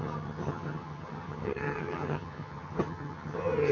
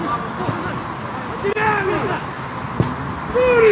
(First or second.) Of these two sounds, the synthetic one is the first